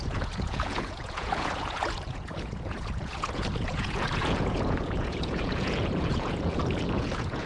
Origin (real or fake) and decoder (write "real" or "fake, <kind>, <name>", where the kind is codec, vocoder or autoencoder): fake, vocoder, Vocos